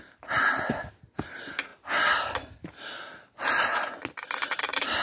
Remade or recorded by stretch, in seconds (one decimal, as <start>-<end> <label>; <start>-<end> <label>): 0.0-5.0 recorded